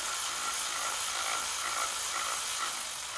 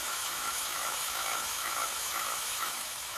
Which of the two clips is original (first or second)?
first